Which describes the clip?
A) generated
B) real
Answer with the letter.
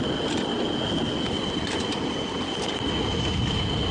B